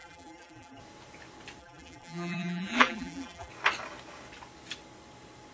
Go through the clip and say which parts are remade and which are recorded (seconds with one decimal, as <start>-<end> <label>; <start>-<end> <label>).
0.0-0.8 remade; 0.8-1.6 recorded; 1.6-3.5 remade; 3.5-5.5 recorded